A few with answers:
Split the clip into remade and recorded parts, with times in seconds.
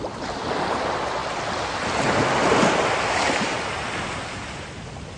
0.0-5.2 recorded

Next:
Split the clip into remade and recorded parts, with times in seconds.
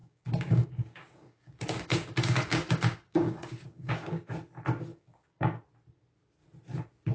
0.0-4.3 remade; 4.3-4.9 recorded; 4.9-5.6 remade; 5.6-7.1 recorded